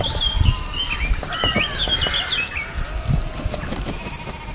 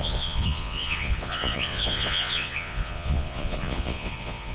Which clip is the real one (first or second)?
first